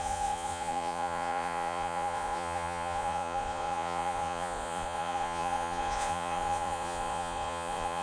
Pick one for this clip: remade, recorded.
remade